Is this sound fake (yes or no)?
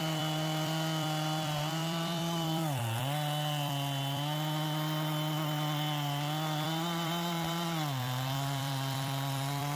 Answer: yes